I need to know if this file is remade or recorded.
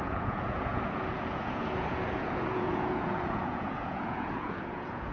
remade